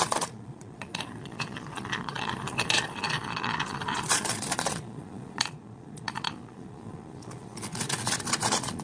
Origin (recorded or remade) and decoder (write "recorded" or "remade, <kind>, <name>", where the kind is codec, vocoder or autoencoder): remade, vocoder, Vocos